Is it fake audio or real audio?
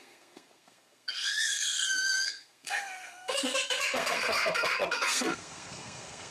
fake